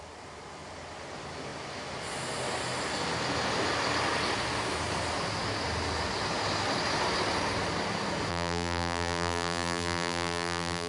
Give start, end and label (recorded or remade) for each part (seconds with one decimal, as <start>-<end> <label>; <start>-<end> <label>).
0.0-8.3 recorded; 8.3-10.9 remade